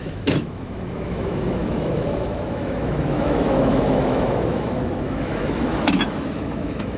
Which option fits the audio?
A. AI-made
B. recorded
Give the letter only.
A